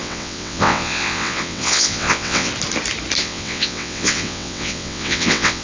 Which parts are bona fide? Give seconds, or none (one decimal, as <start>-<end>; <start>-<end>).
2.5-3.2